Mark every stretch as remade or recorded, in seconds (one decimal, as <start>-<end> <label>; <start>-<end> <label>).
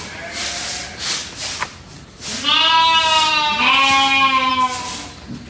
0.0-5.5 recorded